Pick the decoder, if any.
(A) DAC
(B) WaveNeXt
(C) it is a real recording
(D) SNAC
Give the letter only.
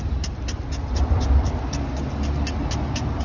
C